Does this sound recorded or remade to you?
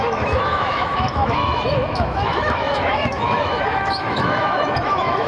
remade